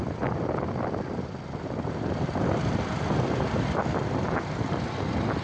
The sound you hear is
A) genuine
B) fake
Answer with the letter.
A